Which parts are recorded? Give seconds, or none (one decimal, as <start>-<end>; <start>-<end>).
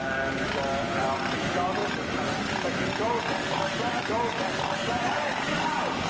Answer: 0.0-3.4